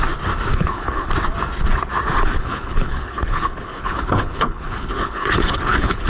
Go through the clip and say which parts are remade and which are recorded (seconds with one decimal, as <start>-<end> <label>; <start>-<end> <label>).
0.0-0.5 recorded; 0.5-1.1 remade; 1.1-2.1 recorded; 2.1-6.1 remade